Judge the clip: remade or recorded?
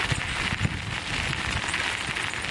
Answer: recorded